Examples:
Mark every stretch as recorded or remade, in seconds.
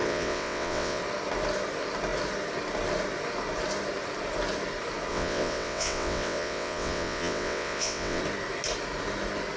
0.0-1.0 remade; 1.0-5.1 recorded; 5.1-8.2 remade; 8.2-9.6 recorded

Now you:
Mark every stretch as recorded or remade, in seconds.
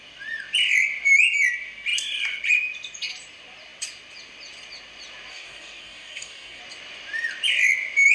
0.0-5.3 recorded; 5.3-6.6 remade; 6.6-8.1 recorded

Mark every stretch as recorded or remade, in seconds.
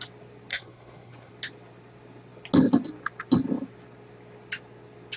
0.0-0.5 recorded; 0.5-1.3 remade; 1.3-5.2 recorded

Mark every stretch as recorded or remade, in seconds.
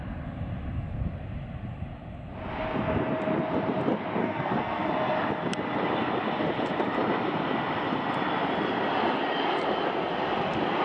0.0-4.2 recorded; 4.2-4.9 remade; 4.9-10.8 recorded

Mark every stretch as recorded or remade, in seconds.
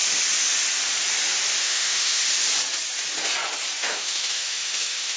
0.0-1.6 recorded; 1.6-2.2 remade; 2.2-3.8 recorded; 3.8-5.2 remade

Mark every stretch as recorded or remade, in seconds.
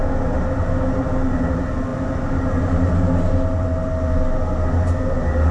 0.0-5.5 recorded